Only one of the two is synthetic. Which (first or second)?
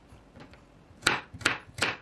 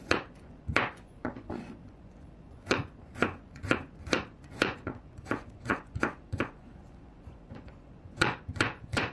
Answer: second